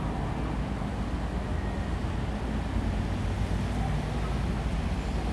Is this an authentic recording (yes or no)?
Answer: yes